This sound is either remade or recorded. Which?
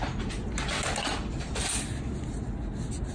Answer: recorded